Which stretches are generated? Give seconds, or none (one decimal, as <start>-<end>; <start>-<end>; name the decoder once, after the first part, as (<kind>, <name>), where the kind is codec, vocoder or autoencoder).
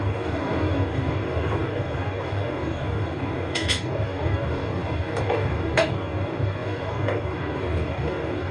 0.0-8.5 (codec, DAC)